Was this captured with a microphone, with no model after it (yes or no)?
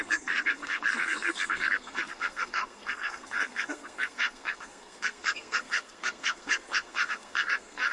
no